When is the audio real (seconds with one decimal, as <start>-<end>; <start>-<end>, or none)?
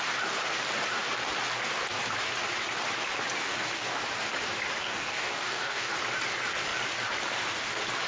0.0-3.4; 4.0-4.8; 5.9-8.1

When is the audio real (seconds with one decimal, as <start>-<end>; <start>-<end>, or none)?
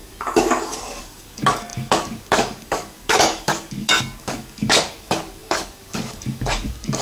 none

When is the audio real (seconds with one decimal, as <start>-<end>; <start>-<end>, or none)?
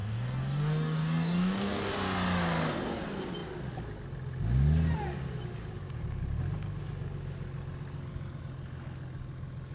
1.9-9.7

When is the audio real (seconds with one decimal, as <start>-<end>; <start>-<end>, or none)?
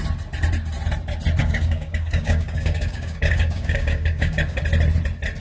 0.0-1.4; 4.6-5.4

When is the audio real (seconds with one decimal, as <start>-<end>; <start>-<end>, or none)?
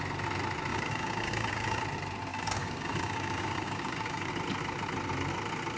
0.0-0.7; 1.8-2.3; 4.3-5.8